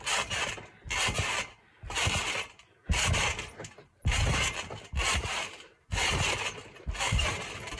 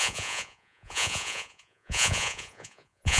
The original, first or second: first